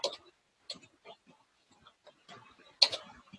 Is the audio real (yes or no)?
yes